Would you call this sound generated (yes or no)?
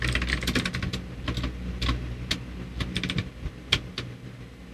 no